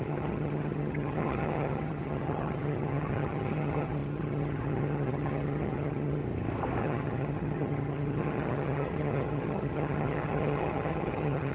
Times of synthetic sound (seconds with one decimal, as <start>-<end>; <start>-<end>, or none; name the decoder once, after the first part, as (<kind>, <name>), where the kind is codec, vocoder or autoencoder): 0.0-6.2 (vocoder, HiFi-GAN); 6.8-11.5